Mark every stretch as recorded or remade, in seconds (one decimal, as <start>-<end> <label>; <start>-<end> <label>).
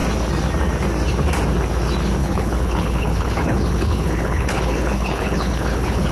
0.0-2.2 recorded; 2.2-6.1 remade